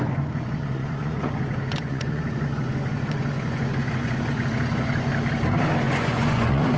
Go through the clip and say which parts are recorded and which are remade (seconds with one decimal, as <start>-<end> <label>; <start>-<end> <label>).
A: 0.0-5.1 remade; 5.1-5.8 recorded; 5.8-6.8 remade